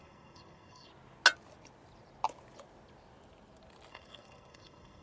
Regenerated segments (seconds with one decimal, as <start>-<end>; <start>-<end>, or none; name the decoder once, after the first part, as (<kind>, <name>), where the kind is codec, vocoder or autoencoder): 0.0-0.9 (codec, SNAC); 3.9-5.0